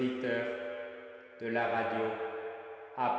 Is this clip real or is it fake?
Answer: real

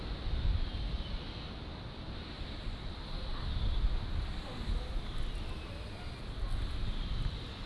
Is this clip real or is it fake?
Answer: real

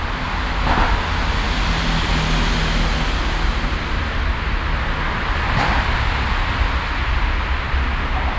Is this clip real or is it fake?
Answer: real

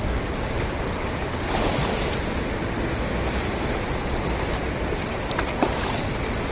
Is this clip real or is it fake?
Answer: real